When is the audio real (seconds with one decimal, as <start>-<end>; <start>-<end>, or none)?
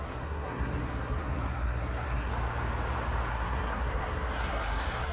2.3-3.3